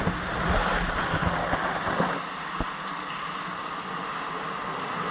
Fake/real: real